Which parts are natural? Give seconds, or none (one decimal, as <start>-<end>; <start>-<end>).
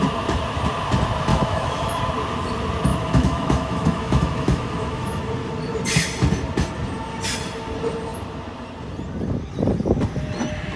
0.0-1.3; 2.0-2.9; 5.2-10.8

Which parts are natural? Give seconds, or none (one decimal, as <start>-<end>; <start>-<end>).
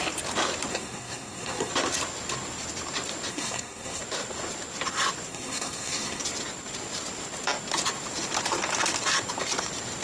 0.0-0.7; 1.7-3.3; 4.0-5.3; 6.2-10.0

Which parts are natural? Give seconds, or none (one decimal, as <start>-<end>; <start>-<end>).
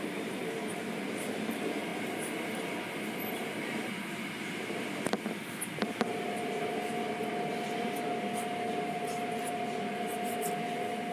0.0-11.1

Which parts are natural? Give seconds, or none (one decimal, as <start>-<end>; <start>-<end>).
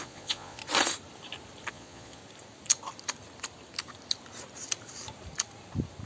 0.6-1.7; 2.2-6.1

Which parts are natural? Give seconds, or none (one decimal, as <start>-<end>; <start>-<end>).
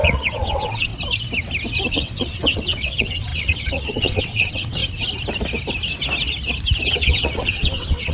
0.9-1.9; 4.8-6.9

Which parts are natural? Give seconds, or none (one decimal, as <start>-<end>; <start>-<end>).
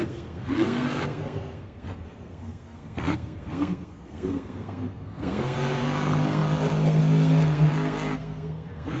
none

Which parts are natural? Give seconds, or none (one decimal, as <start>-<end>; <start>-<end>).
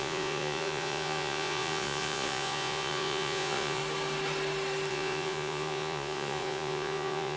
3.8-4.9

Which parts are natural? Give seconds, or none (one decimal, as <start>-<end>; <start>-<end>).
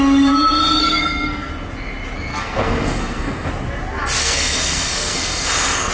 0.0-0.8; 1.5-2.3; 3.5-4.2